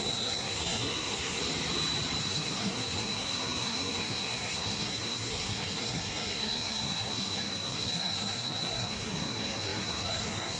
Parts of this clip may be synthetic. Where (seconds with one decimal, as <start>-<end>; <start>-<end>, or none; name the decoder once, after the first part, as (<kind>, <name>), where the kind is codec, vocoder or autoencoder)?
0.0-1.4 (codec, SNAC); 2.2-10.6